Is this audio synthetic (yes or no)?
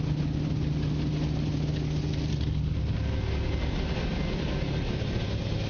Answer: no